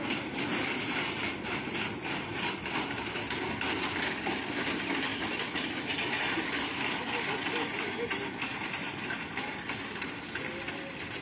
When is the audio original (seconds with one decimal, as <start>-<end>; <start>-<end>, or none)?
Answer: 0.0-11.2